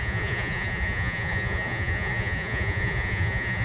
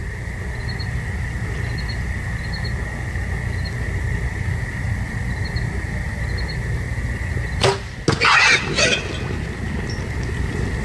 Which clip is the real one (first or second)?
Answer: second